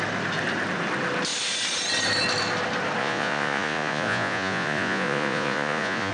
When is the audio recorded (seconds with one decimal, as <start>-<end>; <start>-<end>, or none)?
0.0-3.0